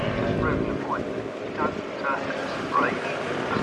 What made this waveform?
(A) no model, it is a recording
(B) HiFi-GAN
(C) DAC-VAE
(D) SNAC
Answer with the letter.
A